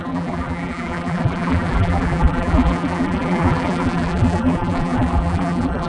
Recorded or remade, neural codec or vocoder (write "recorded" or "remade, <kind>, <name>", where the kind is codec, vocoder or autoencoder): remade, vocoder, BigVGAN v2